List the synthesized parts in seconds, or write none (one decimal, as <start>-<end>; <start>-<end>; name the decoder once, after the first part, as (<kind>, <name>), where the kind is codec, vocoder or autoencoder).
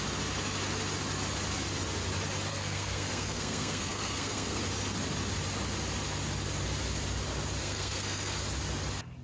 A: 2.5-4.6 (codec, SNAC); 7.6-8.4